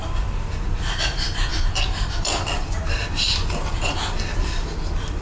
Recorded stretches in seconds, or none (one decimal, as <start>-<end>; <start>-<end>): none